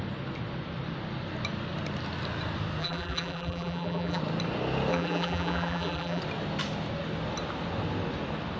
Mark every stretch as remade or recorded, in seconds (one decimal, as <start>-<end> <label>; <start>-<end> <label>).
0.0-2.8 recorded; 2.8-4.2 remade; 4.2-4.9 recorded; 4.9-6.2 remade; 6.2-8.6 recorded

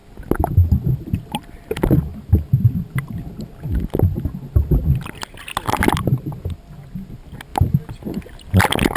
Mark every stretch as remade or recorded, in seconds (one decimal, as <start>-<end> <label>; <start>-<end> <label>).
0.0-2.1 recorded; 2.1-2.7 remade; 2.7-9.0 recorded

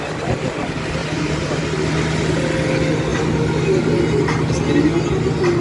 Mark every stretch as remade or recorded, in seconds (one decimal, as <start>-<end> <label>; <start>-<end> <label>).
0.0-1.0 recorded; 1.0-1.6 remade; 1.6-5.6 recorded